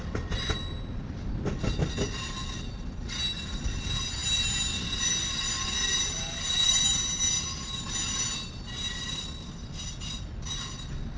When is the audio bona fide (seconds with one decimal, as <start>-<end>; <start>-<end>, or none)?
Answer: 0.0-11.2